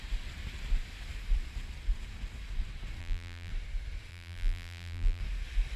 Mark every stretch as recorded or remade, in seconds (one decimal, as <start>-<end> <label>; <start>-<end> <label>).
0.0-3.0 recorded; 3.0-3.5 remade; 3.5-4.1 recorded; 4.1-5.2 remade; 5.2-5.8 recorded